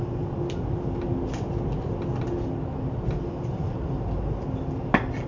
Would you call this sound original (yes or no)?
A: yes